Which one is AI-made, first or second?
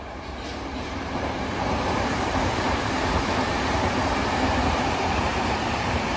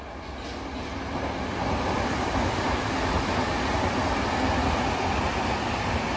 first